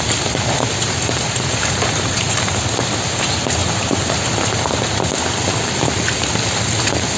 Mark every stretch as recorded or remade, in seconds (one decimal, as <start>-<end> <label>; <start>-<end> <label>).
0.0-0.8 recorded; 0.8-2.6 remade; 2.6-3.6 recorded; 3.6-5.1 remade; 5.1-7.2 recorded